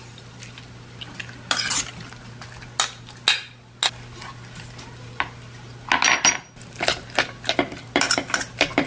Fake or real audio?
real